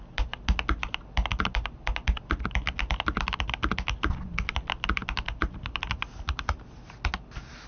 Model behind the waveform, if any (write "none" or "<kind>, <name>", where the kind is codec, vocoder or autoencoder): none